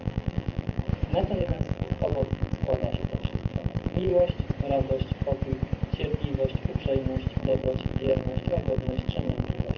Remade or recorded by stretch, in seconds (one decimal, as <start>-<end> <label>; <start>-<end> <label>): 0.0-0.9 remade; 0.9-1.4 recorded; 1.4-4.1 remade; 4.1-7.4 recorded; 7.4-9.8 remade